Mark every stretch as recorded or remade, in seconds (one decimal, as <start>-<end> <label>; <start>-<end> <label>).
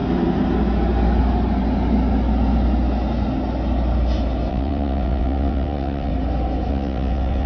0.0-4.5 recorded; 4.5-6.1 remade; 6.1-6.7 recorded; 6.7-7.5 remade